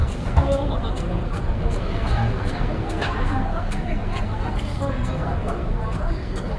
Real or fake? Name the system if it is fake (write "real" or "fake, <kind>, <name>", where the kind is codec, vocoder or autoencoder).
fake, codec, SNAC